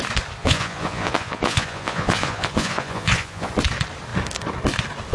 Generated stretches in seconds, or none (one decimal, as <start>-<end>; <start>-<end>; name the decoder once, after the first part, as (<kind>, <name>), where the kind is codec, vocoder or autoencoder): 0.4-3.5 (vocoder, Vocos)